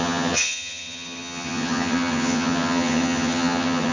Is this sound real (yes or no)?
no